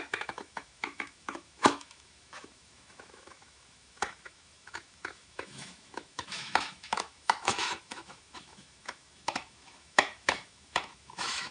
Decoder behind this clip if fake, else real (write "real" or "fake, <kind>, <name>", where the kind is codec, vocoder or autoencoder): fake, autoencoder, DAC-VAE